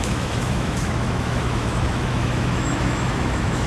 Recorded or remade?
remade